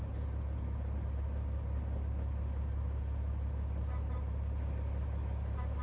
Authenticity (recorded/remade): recorded